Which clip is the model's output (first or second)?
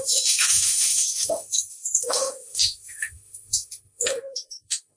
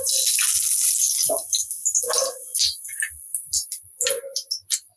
first